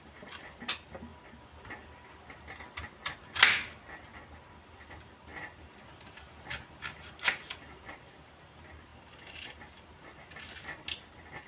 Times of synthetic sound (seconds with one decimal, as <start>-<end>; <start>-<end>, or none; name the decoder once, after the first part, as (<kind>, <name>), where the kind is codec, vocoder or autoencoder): none

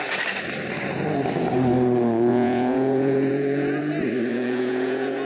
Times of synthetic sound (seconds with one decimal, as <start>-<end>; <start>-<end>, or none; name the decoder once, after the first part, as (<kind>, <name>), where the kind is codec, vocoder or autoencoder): 2.3-3.8 (vocoder, Vocos); 4.3-5.3

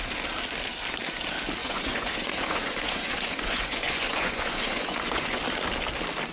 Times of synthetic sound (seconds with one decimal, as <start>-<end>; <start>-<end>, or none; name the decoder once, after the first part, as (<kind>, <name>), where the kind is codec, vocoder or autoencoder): 1.6-5.4 (vocoder, Vocos)

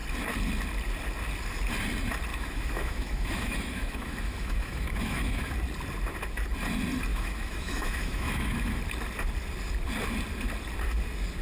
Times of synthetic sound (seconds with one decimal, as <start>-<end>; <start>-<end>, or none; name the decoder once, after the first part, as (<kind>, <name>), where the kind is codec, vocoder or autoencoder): 2.3-5.5 (autoencoder, DAC-VAE); 7.1-8.8